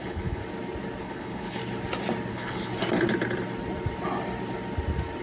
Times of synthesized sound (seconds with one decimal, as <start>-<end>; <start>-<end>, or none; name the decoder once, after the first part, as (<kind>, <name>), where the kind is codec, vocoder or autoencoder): 0.0-0.4 (codec, HILCodec); 1.0-1.6; 2.3-2.7